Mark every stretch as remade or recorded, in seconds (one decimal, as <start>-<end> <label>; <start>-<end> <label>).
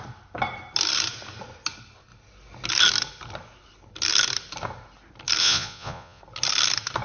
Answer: 0.0-5.4 recorded; 5.4-6.2 remade; 6.2-7.0 recorded